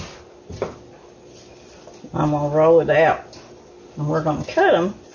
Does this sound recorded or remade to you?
recorded